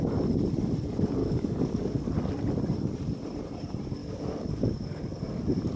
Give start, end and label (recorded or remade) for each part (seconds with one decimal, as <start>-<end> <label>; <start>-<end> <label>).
0.0-1.2 recorded; 1.2-2.1 remade; 2.1-4.0 recorded; 4.0-5.0 remade; 5.0-5.8 recorded